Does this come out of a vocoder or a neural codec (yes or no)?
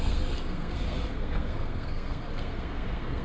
yes